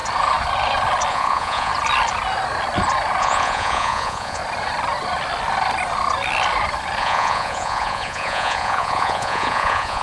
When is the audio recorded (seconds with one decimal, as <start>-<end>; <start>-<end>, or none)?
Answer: 0.0-1.1; 1.7-3.2; 4.4-7.0